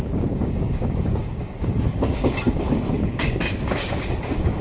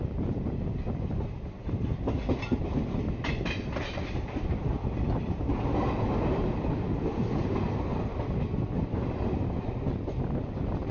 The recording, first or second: second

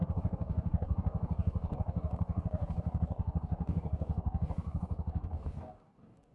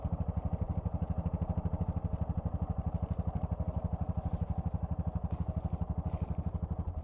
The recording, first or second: second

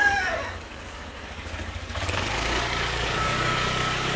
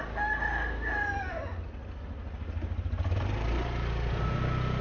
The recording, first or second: second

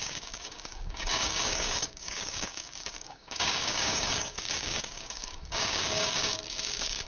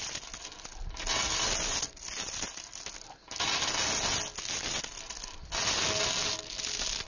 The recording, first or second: second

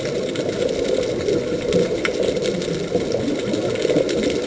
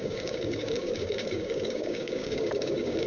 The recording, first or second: first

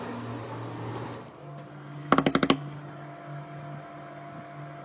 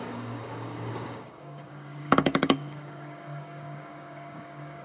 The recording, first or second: first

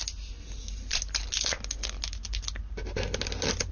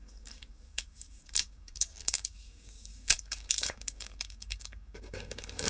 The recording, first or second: first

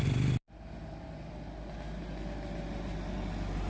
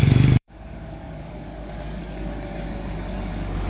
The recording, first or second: first